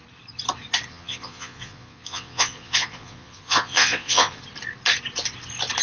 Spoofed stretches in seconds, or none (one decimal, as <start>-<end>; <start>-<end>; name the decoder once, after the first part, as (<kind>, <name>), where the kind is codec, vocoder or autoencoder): 0.9-4.4 (vocoder, Vocos)